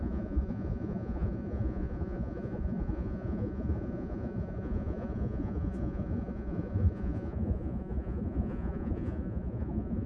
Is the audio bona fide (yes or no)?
no